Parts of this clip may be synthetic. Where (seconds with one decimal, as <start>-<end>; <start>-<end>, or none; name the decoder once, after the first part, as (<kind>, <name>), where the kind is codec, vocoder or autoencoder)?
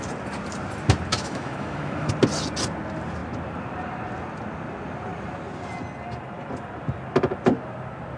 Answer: 1.1-2.1 (autoencoder, DAC-VAE)